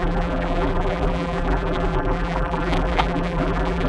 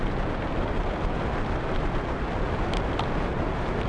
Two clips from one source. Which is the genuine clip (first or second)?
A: second